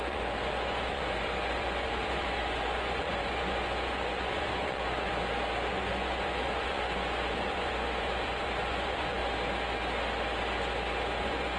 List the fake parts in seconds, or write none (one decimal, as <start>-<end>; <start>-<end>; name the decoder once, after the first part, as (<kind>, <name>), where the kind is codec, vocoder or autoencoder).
0.0-5.1 (vocoder, Vocos); 5.7-9.2; 11.2-11.6